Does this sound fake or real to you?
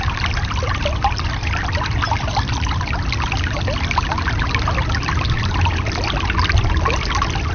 real